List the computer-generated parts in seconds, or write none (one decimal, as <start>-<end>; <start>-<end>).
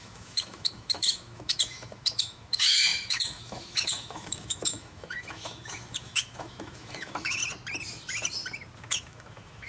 0.0-7.4; 8.8-9.7